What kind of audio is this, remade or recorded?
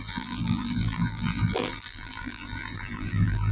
remade